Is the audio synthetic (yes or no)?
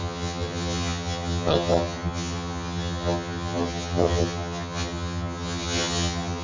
yes